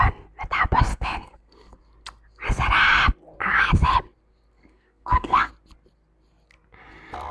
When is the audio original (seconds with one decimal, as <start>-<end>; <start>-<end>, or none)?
0.0-0.9; 1.8-4.6; 5.5-7.3